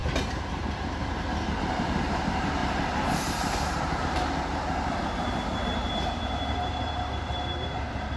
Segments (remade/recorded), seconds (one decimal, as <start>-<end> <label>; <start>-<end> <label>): 0.0-1.6 recorded; 1.6-8.2 remade

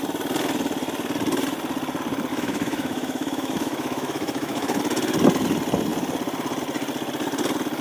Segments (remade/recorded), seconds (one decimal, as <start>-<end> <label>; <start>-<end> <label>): 0.0-2.3 recorded; 2.3-4.8 remade; 4.8-7.8 recorded

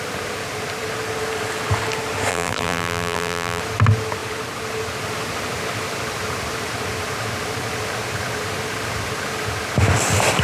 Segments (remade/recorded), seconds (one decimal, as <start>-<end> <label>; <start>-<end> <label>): 0.0-2.3 recorded; 2.3-3.6 remade; 3.6-10.4 recorded

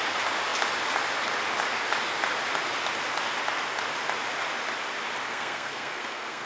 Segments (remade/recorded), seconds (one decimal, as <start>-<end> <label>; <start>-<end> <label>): 0.0-5.3 recorded; 5.3-6.5 remade

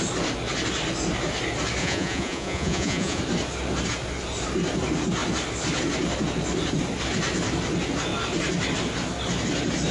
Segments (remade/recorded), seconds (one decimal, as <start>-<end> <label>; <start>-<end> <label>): 0.0-1.8 recorded; 1.8-3.2 remade; 3.2-9.9 recorded

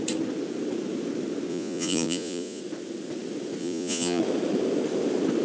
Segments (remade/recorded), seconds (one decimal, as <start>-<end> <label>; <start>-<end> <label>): 0.0-1.5 recorded; 1.5-2.6 remade; 2.6-3.6 recorded; 3.6-4.2 remade; 4.2-5.4 recorded